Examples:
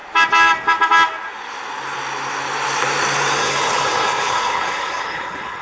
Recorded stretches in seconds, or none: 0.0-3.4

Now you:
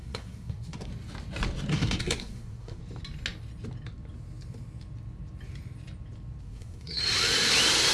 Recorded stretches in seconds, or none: 0.9-1.7; 2.8-6.4; 7.0-7.9

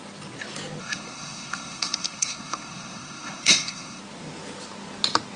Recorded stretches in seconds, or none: 0.0-0.8; 4.0-5.4